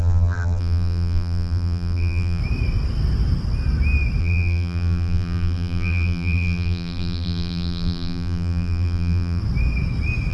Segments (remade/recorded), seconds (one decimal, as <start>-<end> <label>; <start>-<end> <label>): 0.0-2.4 remade; 2.4-4.2 recorded; 4.2-9.4 remade; 9.4-10.3 recorded